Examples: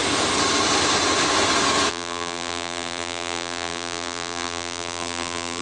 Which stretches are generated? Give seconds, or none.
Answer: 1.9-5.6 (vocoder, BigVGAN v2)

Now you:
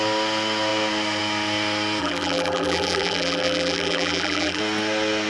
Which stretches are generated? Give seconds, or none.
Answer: 2.0-4.6 (vocoder, BigVGAN v2)

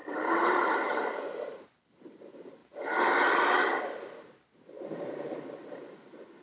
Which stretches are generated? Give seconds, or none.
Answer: 0.0-1.1 (vocoder, BigVGAN v2)

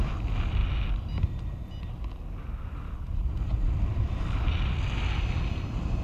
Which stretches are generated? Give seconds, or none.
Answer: none

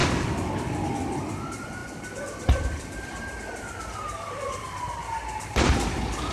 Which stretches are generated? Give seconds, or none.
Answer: 1.8-3.8 (vocoder, BigVGAN v2)

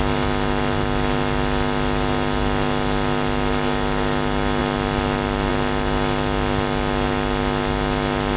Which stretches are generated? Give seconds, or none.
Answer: none

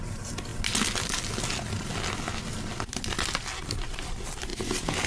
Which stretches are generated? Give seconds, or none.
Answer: 0.0-0.5 (vocoder, BigVGAN v2); 3.6-4.5